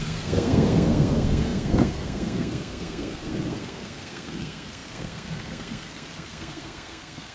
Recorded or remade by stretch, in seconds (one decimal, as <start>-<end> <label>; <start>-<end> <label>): 0.0-7.3 remade

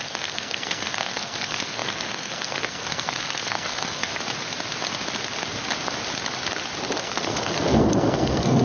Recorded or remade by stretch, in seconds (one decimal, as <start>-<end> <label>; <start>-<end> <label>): 0.0-4.1 remade; 4.1-7.0 recorded; 7.0-8.6 remade

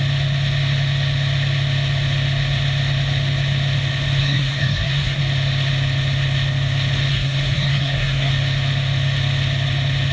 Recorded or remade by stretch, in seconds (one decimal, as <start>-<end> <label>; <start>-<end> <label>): 0.0-4.2 recorded; 4.2-5.2 remade; 5.2-7.1 recorded; 7.1-8.3 remade; 8.3-10.1 recorded

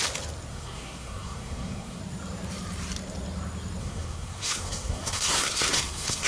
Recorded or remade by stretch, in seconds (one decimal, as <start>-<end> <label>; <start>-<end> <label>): 0.0-0.5 recorded; 0.5-2.0 remade; 2.0-3.8 recorded; 3.8-6.3 remade

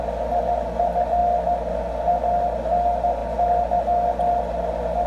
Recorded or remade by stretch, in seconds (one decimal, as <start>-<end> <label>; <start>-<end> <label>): 0.0-5.1 recorded